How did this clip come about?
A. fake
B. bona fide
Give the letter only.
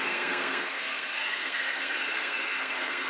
A